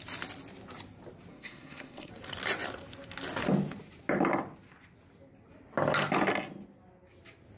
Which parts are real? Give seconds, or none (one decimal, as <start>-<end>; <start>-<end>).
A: 0.0-1.3; 2.1-7.6